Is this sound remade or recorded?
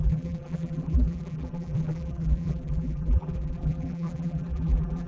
remade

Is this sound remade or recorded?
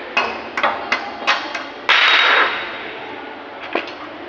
recorded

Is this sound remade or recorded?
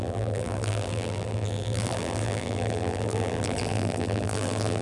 remade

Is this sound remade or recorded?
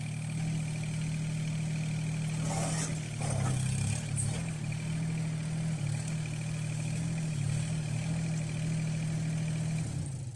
recorded